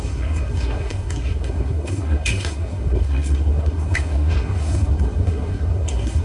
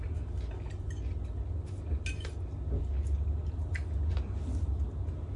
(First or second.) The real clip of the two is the second